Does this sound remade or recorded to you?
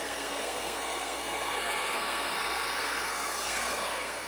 remade